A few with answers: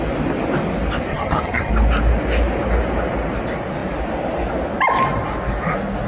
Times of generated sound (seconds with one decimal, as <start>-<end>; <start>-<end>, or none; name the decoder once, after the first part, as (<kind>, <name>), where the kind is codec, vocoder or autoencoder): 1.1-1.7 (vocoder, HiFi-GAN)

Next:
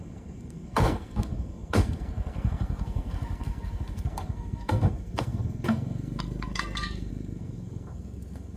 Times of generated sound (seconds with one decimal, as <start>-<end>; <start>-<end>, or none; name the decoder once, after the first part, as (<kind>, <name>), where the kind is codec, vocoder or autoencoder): 0.0-8.6 (codec, SNAC)

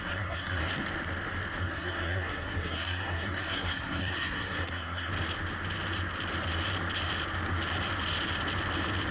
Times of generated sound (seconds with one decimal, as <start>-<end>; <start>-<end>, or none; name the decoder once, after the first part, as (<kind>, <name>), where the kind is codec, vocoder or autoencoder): 0.0-0.6 (codec, SNAC); 1.6-5.1

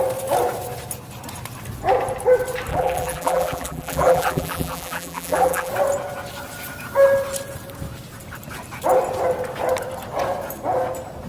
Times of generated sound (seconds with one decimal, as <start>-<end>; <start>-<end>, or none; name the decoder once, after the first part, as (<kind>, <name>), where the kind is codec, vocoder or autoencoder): 2.7-5.7 (vocoder, BigVGAN v2)

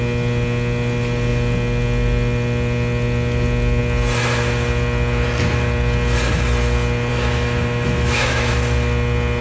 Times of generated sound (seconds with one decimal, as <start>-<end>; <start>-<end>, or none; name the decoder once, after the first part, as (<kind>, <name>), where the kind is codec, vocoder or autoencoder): 7.1-8.5 (autoencoder, DAC-VAE)